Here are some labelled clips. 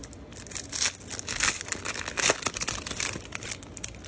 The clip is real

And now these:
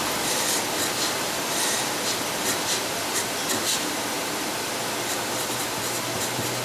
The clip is fake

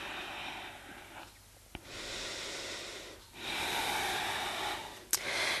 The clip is real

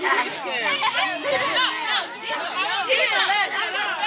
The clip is real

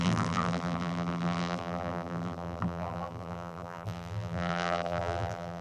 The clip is fake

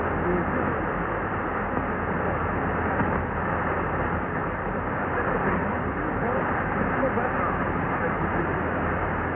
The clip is real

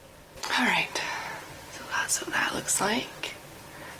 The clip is real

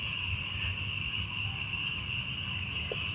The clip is real